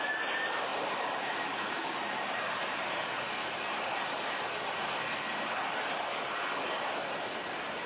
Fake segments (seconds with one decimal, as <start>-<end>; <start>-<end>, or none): 0.7-2.6; 3.4-4.1